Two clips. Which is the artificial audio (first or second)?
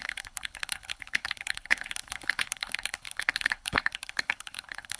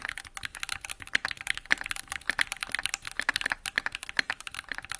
first